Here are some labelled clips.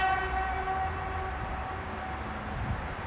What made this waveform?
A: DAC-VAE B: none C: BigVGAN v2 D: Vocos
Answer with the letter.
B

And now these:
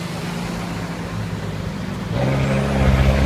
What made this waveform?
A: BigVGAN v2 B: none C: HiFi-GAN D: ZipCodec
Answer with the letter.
B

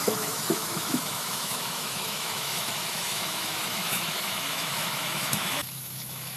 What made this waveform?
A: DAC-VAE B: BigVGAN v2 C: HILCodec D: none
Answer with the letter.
A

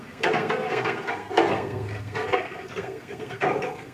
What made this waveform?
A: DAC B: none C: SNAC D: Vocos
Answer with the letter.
C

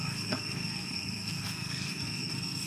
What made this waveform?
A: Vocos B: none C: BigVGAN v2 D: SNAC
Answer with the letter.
D